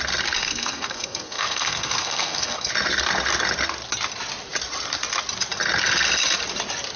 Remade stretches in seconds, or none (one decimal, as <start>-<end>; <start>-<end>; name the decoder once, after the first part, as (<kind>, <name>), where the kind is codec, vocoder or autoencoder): 0.4-2.7 (codec, SNAC)